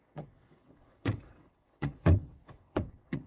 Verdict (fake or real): fake